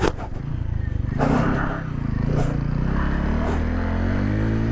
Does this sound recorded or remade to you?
recorded